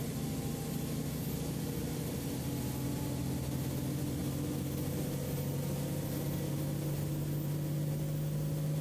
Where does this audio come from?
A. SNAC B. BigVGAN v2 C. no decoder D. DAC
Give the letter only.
C